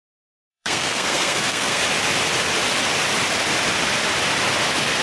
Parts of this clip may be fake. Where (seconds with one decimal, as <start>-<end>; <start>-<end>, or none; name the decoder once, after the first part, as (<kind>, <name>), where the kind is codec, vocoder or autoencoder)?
0.5-1.8 (codec, SNAC)